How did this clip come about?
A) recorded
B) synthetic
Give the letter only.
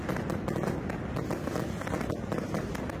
A